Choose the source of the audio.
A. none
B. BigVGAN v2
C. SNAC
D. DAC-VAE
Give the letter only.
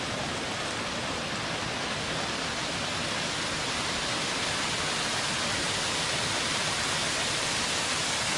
A